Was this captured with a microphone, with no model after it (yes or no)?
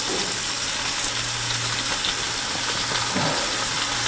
yes